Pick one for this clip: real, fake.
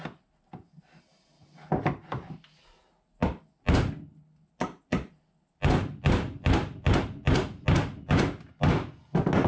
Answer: real